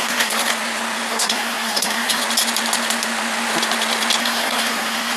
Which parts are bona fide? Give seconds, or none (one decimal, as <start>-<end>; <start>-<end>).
0.5-1.1; 2.2-4.2